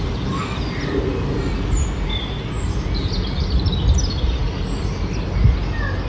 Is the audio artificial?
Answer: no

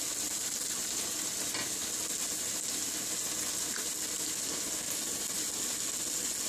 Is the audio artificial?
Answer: no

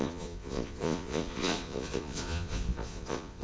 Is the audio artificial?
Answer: yes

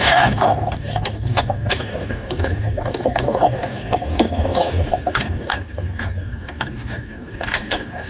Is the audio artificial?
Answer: yes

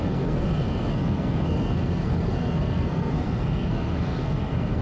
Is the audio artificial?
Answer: yes